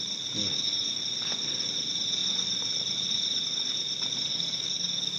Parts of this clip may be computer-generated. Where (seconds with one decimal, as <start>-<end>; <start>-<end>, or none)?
0.4-1.0; 4.3-5.2